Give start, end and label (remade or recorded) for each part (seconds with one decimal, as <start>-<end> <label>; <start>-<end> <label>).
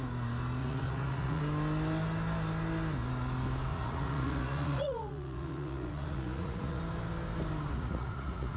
0.0-0.6 recorded; 0.6-1.4 remade; 1.4-3.7 recorded; 3.7-6.8 remade; 6.8-7.7 recorded; 7.7-8.6 remade